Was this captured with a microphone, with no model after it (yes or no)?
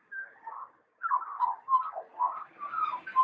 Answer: no